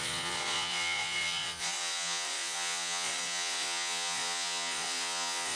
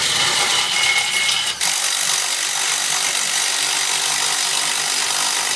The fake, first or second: first